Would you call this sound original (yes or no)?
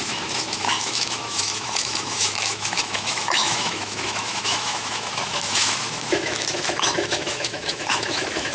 no